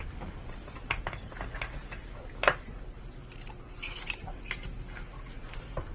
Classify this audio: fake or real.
real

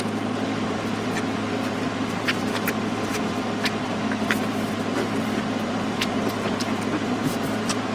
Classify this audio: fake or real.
real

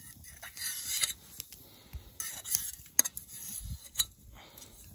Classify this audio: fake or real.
real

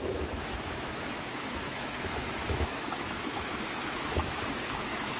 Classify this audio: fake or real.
fake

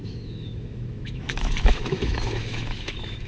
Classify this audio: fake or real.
fake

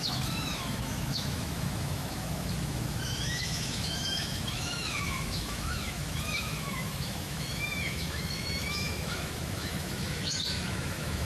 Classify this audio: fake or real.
fake